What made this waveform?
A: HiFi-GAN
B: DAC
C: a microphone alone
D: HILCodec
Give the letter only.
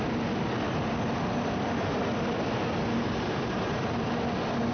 C